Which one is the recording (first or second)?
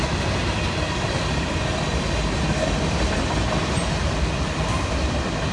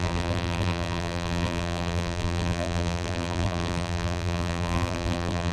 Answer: first